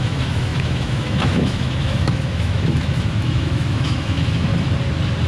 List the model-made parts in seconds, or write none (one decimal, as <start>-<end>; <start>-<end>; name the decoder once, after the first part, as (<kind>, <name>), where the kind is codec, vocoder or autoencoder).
0.0-4.5 (autoencoder, DAC-VAE)

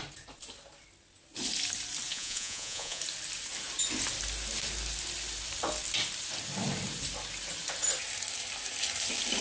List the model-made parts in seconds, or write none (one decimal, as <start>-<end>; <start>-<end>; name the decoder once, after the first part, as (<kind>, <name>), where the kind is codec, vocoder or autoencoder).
2.1-3.0 (vocoder, Vocos)

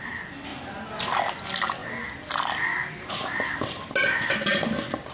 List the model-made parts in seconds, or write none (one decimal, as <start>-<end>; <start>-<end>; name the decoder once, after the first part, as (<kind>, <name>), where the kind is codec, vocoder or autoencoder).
none

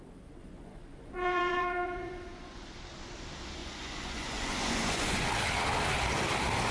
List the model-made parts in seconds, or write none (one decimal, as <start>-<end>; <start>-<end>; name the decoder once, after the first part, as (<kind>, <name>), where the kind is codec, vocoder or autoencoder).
0.4-2.6 (vocoder, Vocos); 3.6-5.3